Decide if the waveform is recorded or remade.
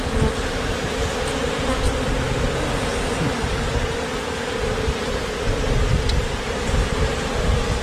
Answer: recorded